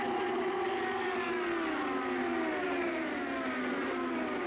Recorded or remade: recorded